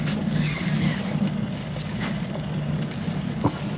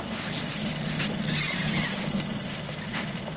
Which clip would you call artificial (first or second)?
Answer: first